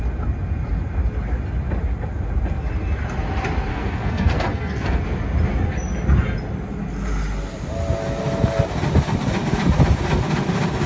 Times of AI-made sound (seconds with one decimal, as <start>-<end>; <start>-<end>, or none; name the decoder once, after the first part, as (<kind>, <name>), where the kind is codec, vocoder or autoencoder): 3.7-5.0 (codec, SNAC)